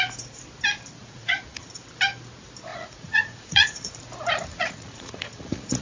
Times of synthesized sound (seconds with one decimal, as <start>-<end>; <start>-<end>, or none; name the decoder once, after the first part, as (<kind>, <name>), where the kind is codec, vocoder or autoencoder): 1.0-1.7 (vocoder, Vocos); 2.7-3.9; 4.5-5.8

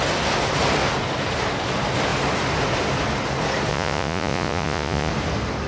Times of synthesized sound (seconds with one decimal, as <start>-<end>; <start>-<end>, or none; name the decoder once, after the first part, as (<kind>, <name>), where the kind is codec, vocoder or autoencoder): 3.7-5.1 (vocoder, Vocos)

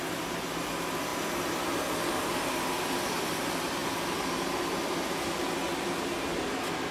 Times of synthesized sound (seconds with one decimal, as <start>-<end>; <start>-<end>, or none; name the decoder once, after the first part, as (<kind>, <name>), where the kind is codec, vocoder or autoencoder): none